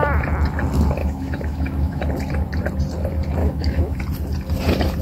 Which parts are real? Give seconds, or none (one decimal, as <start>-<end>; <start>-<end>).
0.0-1.0; 2.0-3.4; 4.0-5.0